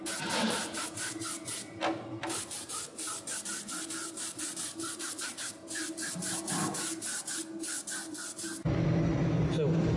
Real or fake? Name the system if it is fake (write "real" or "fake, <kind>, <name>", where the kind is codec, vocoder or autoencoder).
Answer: real